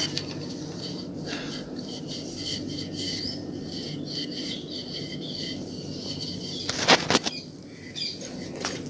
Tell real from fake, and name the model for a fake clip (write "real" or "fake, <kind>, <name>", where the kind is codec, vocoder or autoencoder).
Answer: real